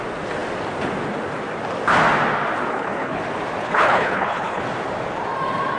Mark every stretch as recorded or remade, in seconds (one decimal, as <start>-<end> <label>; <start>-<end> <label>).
0.0-2.7 recorded; 2.7-3.2 remade; 3.2-3.6 recorded; 3.6-4.6 remade; 4.6-5.8 recorded